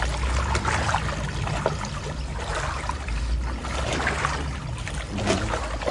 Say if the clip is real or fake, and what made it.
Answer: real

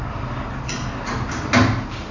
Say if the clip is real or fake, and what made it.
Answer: real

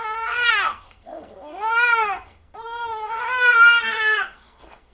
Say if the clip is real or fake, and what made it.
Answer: fake, codec, SNAC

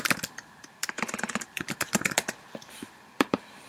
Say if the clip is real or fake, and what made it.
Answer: fake, vocoder, BigVGAN v2